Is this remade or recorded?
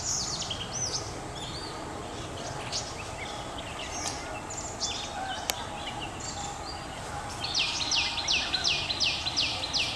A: recorded